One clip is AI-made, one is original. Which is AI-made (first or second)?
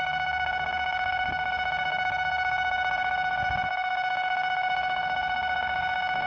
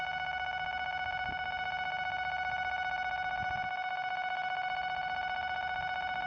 first